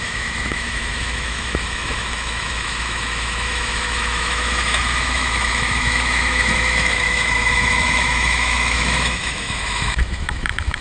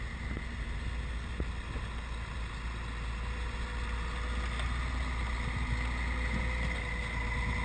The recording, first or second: second